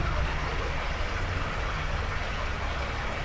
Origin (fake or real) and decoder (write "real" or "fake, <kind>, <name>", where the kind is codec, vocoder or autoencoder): real